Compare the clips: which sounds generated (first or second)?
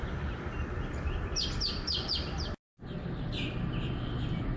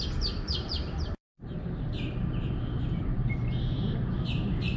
second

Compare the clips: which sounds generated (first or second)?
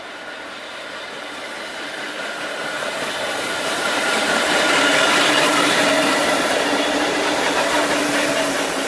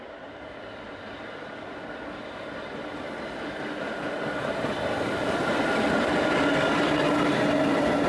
first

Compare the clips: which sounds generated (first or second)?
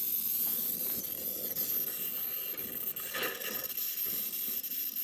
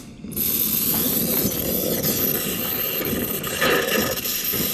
second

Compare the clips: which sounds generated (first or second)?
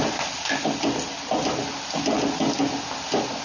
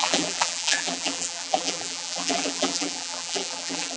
second